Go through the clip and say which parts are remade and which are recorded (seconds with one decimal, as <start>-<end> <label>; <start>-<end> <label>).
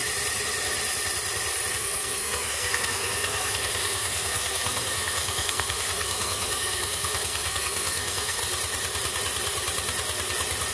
0.0-1.7 recorded; 1.7-8.4 remade; 8.4-10.7 recorded